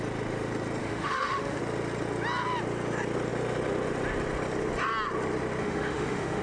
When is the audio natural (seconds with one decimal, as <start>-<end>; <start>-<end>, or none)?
0.0-0.8; 1.6-5.6